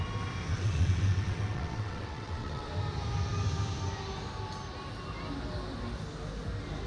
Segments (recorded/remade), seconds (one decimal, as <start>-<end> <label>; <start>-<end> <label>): 0.0-0.5 recorded; 0.5-2.7 remade; 2.7-6.9 recorded

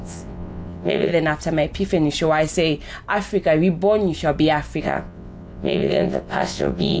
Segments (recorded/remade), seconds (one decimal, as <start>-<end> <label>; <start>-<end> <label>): 0.0-1.1 remade; 1.1-4.8 recorded; 4.8-7.0 remade

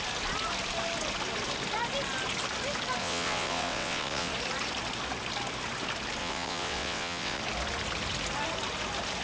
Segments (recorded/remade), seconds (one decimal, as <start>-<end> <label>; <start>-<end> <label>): 0.0-3.0 recorded; 3.0-4.3 remade; 4.3-6.2 recorded; 6.2-7.4 remade; 7.4-9.2 recorded

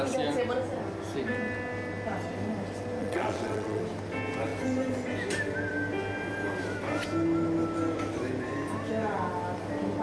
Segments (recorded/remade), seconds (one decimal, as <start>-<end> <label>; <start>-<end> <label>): 0.0-3.0 recorded; 3.0-3.8 remade; 3.8-10.0 recorded

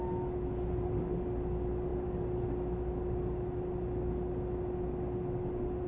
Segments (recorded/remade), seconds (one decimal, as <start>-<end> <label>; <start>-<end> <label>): 0.0-5.9 recorded

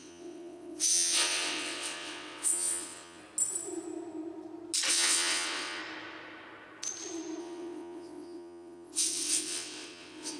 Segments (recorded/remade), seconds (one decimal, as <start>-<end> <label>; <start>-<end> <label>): 0.0-3.2 remade; 3.2-4.9 recorded; 4.9-5.8 remade; 5.8-7.4 recorded; 7.4-10.4 remade

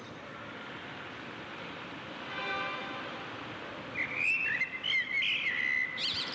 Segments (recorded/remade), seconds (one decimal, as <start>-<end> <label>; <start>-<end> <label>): 0.0-6.3 recorded

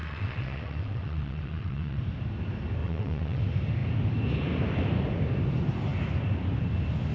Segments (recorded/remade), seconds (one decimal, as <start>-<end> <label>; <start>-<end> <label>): 0.0-2.0 remade; 2.0-2.8 recorded; 2.8-3.4 remade; 3.4-7.1 recorded